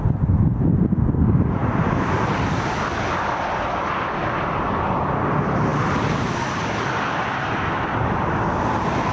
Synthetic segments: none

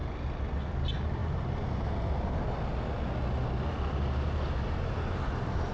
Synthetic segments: none

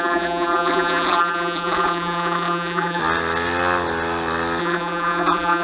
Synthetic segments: 0.0-3.0 (vocoder, BigVGAN v2); 4.6-5.6

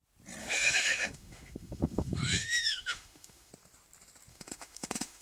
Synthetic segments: 0.4-3.5 (autoencoder, DAC-VAE); 4.3-5.2

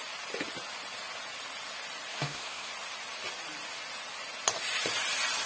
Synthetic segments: 2.1-2.7 (codec, SNAC)

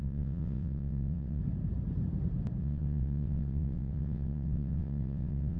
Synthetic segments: 0.0-1.4 (vocoder, WaveNeXt); 2.6-5.6

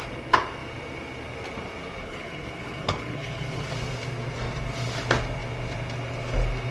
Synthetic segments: 2.0-3.7 (codec, HILCodec)